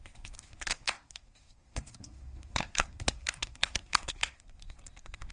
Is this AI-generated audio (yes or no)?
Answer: yes